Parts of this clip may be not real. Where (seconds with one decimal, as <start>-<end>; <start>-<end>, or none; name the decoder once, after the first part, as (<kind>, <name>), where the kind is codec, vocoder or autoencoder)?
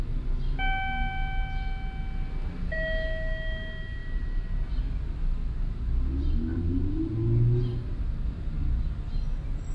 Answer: 4.0-4.8 (vocoder, BigVGAN v2); 6.5-7.1